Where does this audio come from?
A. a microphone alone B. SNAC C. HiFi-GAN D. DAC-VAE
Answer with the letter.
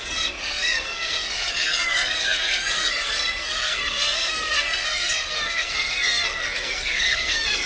B